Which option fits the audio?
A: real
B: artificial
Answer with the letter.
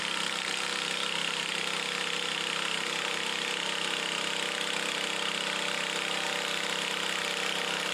A